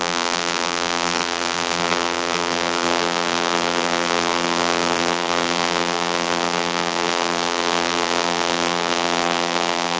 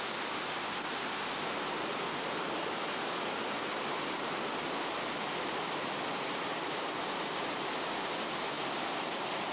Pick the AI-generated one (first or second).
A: first